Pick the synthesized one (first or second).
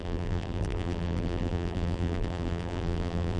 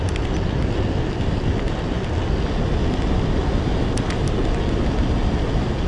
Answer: first